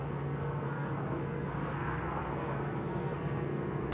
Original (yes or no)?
no